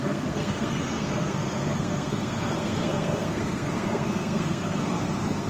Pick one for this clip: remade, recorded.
remade